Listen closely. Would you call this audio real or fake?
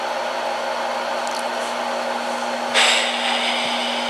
real